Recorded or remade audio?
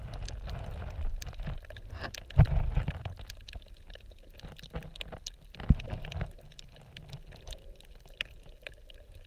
recorded